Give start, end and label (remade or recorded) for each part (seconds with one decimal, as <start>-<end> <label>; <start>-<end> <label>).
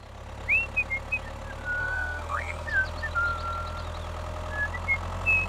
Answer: 0.0-1.8 recorded; 1.8-2.7 remade; 2.7-5.5 recorded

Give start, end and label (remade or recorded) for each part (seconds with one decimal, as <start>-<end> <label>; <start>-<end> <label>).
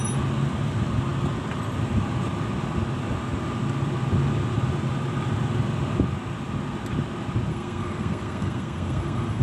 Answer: 0.0-7.5 recorded; 7.5-9.4 remade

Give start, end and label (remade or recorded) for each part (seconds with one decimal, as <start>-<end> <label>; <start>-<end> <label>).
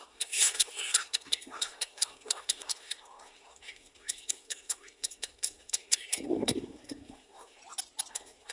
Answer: 0.0-7.6 remade; 7.6-8.1 recorded; 8.1-8.5 remade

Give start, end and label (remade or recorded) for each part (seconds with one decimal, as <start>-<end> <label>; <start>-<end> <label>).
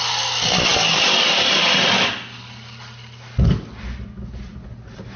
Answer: 0.0-5.2 recorded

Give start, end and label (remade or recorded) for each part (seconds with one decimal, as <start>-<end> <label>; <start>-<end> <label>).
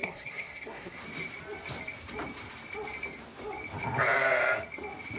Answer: 0.0-1.0 remade; 1.0-5.2 recorded